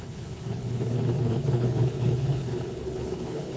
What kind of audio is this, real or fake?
fake